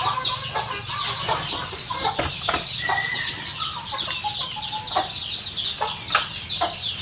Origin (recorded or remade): recorded